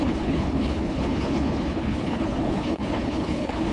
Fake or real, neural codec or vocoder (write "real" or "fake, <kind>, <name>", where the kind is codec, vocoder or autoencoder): fake, codec, HILCodec